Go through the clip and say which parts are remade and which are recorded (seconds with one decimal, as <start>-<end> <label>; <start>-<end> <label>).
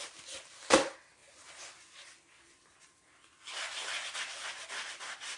0.0-5.4 recorded